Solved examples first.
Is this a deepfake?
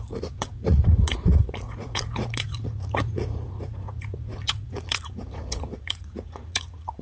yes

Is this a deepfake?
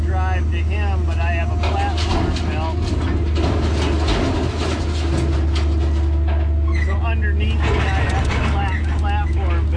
no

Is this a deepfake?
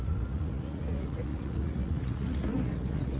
yes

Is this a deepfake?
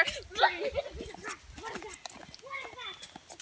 no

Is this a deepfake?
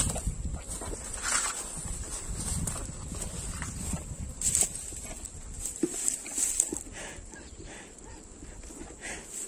no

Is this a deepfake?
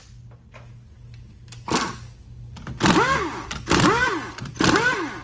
no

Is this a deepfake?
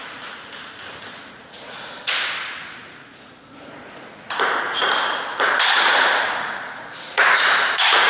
yes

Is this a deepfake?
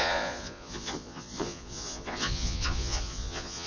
yes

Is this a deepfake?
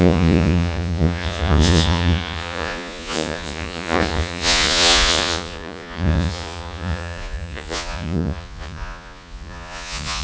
yes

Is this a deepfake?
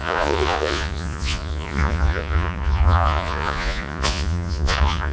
yes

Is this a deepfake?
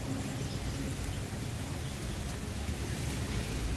no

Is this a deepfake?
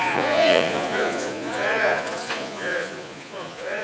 yes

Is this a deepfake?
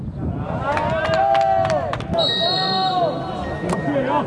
no